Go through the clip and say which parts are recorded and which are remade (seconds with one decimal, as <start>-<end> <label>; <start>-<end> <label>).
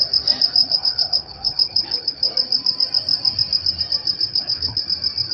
0.0-0.6 recorded; 0.6-2.3 remade; 2.3-4.3 recorded; 4.3-4.8 remade; 4.8-5.3 recorded